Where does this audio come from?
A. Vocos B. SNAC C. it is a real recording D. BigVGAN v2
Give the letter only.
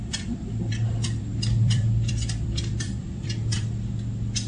D